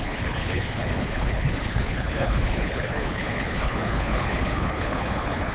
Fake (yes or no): yes